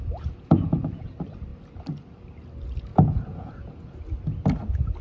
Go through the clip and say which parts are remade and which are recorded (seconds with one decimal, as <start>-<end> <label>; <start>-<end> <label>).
0.0-1.1 remade; 1.1-2.9 recorded; 2.9-4.0 remade; 4.0-5.0 recorded